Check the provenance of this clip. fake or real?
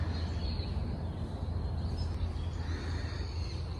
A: real